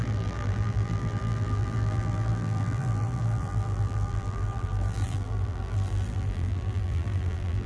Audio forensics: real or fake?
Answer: fake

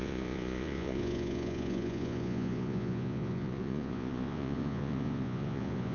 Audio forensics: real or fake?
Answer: fake